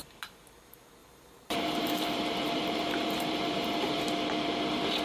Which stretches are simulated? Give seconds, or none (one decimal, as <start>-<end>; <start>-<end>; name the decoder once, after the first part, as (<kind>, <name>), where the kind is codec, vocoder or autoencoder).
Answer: 1.0-4.0 (vocoder, BigVGAN v2)

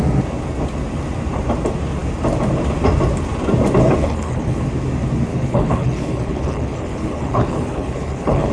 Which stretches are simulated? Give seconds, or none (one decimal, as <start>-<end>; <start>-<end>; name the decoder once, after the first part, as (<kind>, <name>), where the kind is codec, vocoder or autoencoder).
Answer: 4.0-4.6 (codec, HILCodec); 5.3-8.5

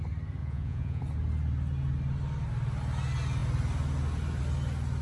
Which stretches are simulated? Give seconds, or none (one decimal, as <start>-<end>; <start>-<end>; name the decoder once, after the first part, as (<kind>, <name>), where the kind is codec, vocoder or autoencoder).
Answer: 0.4-1.0 (vocoder, Vocos)

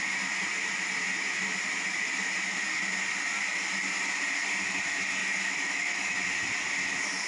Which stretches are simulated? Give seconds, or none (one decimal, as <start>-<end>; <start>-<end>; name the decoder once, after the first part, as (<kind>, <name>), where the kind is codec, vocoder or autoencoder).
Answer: 5.2-6.1 (autoencoder, DAC-VAE)

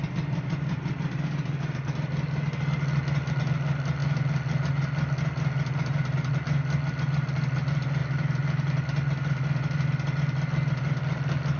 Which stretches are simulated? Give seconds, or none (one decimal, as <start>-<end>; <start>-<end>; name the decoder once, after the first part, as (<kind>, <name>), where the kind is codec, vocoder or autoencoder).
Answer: none

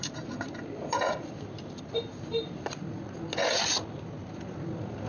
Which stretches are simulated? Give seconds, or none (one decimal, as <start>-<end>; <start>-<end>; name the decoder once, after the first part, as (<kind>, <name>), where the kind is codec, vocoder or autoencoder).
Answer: 0.0-2.8 (vocoder, BigVGAN v2)

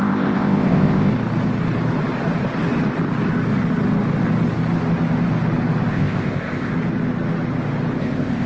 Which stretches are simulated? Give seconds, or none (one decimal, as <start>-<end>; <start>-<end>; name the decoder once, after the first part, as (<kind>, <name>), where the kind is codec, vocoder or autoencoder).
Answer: 0.0-1.1 (codec, ZipCodec); 5.9-6.7; 8.0-8.5

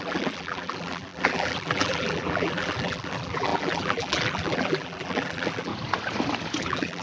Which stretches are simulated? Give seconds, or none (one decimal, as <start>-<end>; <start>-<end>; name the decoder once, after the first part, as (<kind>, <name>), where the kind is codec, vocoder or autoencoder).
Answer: 0.0-5.7 (vocoder, BigVGAN v2); 6.6-7.0